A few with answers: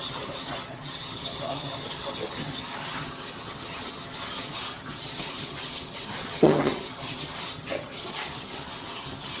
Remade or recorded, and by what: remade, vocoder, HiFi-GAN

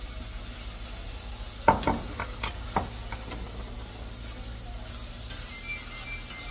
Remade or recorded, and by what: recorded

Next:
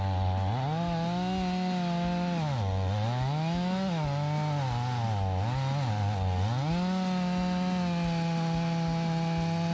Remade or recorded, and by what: recorded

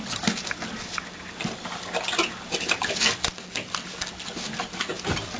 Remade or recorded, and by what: recorded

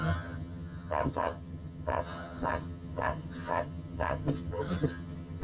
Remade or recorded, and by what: remade, vocoder, HiFi-GAN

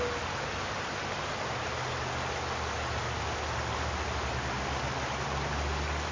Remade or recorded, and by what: recorded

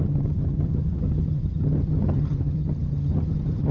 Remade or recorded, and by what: remade, vocoder, HiFi-GAN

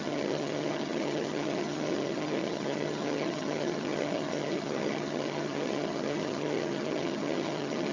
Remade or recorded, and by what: remade, vocoder, HiFi-GAN